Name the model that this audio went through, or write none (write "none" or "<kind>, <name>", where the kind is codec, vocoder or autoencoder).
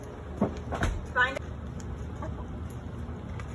none